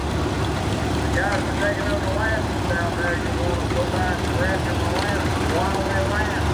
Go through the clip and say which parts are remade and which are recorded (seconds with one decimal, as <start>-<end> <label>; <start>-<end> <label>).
0.0-1.9 remade; 1.9-3.7 recorded; 3.7-6.5 remade